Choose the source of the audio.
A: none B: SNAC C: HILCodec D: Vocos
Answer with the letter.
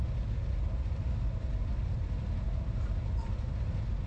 A